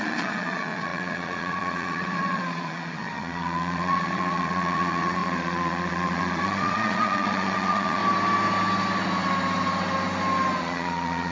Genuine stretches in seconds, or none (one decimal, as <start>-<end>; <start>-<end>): 8.0-10.6